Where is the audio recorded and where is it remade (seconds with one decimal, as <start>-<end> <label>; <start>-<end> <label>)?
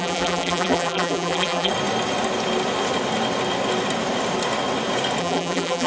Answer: 0.0-1.7 remade; 1.7-5.2 recorded; 5.2-5.9 remade